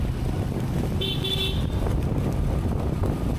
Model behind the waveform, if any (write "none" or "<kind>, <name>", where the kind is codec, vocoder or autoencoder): none